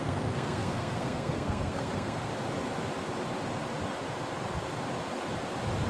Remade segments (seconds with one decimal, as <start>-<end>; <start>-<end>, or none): 0.0-2.3